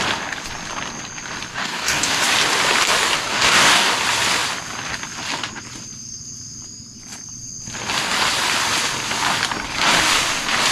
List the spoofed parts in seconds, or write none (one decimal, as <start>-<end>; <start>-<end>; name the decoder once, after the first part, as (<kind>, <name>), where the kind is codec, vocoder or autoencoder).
1.5-2.2 (codec, DAC); 3.3-3.9